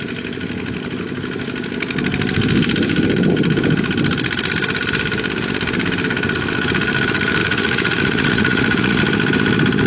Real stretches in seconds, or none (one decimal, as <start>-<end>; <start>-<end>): 0.0-7.4; 9.0-9.9